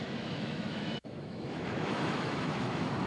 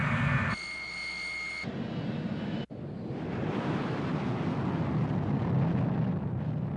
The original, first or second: second